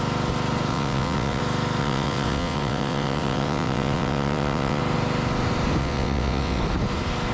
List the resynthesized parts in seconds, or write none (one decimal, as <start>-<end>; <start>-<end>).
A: 0.7-1.4; 1.8-4.8; 5.8-6.6